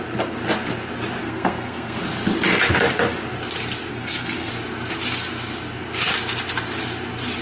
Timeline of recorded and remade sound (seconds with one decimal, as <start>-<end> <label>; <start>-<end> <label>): 0.0-1.2 recorded; 1.2-2.0 remade; 2.0-3.9 recorded; 3.9-4.5 remade; 4.5-7.4 recorded

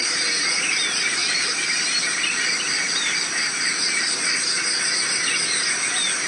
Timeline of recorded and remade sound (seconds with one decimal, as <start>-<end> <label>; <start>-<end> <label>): 0.0-1.2 recorded; 1.2-4.4 remade; 4.4-6.3 recorded

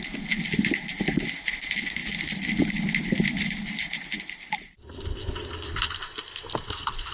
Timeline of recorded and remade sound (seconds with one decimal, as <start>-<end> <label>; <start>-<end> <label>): 0.0-7.1 recorded

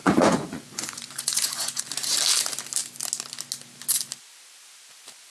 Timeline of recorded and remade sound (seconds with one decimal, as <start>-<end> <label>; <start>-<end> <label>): 0.0-1.8 remade; 1.8-5.3 recorded

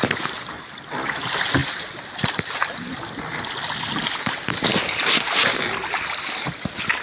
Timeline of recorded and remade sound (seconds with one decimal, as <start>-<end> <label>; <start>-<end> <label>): 0.0-7.0 recorded

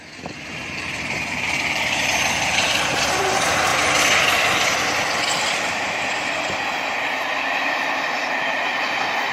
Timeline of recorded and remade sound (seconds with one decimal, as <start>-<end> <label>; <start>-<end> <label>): 0.0-3.7 remade; 3.7-9.3 recorded

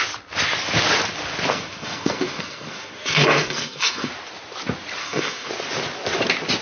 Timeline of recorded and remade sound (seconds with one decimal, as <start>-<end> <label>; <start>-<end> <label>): 0.0-1.5 recorded; 1.5-4.1 remade; 4.1-5.0 recorded; 5.0-5.5 remade; 5.5-6.6 recorded

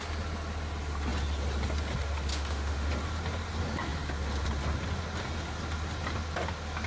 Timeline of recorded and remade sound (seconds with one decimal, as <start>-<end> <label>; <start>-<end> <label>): 0.0-2.3 recorded; 2.3-2.9 remade; 2.9-6.9 recorded